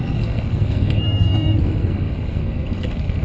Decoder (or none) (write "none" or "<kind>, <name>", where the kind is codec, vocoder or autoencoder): codec, SNAC